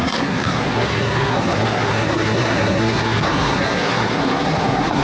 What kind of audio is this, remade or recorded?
remade